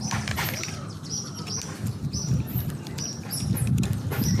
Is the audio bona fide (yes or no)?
yes